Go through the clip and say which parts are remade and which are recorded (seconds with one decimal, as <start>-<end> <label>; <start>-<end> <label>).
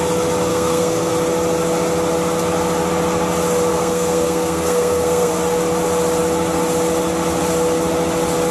0.0-0.5 recorded; 0.5-1.1 remade; 1.1-3.7 recorded; 3.7-5.3 remade; 5.3-8.5 recorded